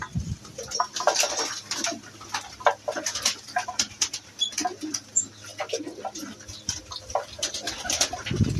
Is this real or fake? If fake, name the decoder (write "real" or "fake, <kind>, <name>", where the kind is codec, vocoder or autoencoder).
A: real